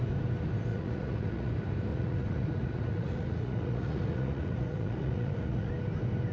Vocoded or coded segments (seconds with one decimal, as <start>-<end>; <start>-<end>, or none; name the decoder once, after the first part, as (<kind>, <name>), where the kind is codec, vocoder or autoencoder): 0.7-1.5 (vocoder, Vocos); 1.9-5.7